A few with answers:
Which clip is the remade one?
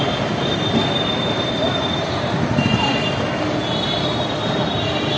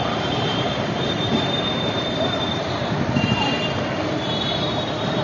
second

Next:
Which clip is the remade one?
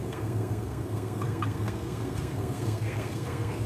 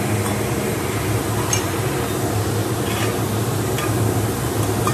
first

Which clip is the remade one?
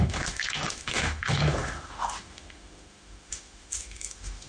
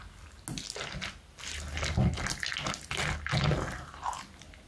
first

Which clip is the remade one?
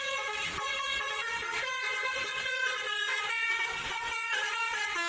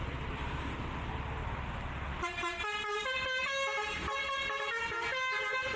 first